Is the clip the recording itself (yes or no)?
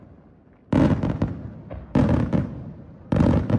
yes